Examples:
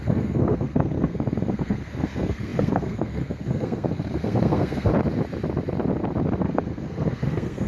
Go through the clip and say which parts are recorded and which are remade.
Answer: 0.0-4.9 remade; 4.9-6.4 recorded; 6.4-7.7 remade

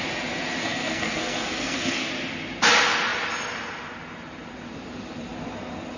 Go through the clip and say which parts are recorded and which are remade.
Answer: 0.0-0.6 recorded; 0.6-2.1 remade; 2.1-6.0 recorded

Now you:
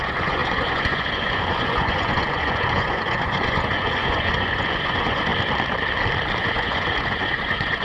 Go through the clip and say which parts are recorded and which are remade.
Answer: 0.0-5.3 remade; 5.3-6.4 recorded; 6.4-7.8 remade

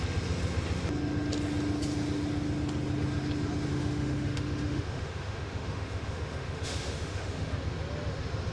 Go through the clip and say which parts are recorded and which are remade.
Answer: 0.0-3.7 recorded; 3.7-7.5 remade; 7.5-8.5 recorded